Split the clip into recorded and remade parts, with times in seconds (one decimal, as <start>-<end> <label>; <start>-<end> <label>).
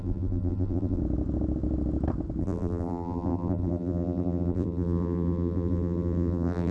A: 0.0-1.0 remade; 1.0-2.4 recorded; 2.4-6.7 remade